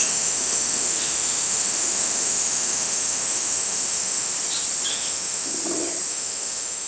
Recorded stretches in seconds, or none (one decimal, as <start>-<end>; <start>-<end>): 4.3-4.9; 5.5-6.1